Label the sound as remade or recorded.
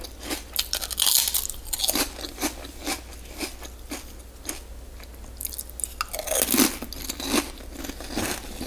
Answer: recorded